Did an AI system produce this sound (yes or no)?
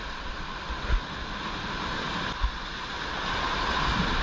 no